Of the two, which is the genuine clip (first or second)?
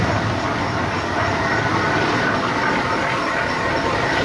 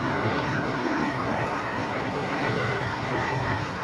first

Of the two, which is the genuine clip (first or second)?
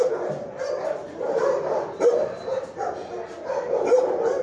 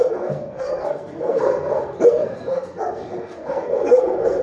first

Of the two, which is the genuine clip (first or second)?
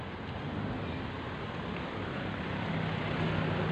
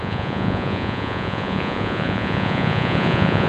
first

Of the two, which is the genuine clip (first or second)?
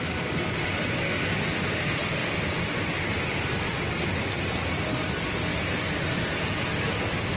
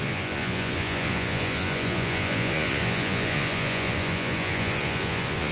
first